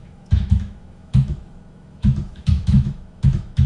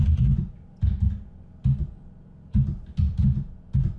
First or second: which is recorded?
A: second